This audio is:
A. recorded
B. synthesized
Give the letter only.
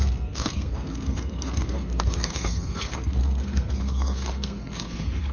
B